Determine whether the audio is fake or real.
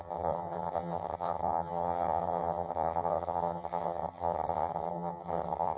fake